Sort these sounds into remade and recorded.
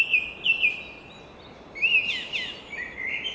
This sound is recorded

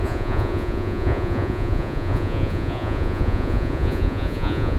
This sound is remade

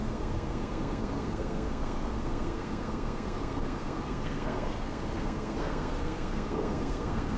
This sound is remade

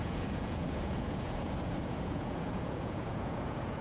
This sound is remade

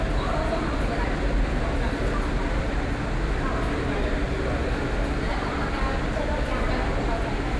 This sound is recorded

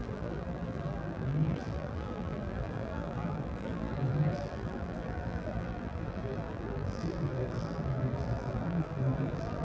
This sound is remade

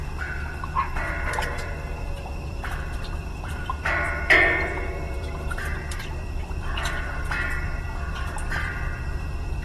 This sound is remade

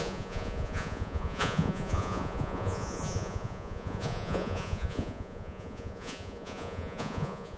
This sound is remade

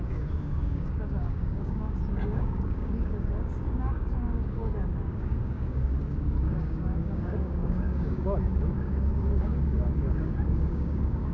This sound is remade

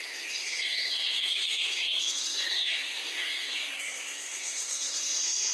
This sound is remade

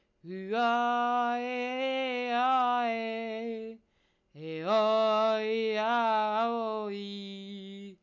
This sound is recorded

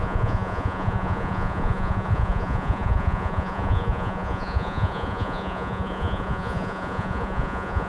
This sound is remade